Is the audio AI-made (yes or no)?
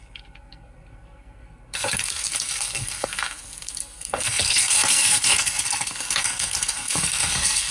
yes